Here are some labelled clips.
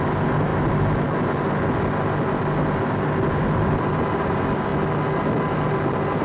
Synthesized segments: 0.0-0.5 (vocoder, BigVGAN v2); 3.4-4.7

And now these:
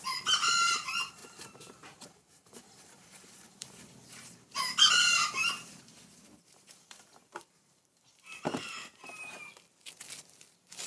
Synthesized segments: 0.0-9.5 (vocoder, BigVGAN v2)